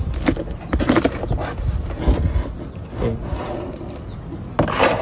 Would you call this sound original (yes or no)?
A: yes